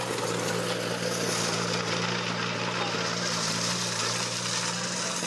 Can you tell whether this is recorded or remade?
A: recorded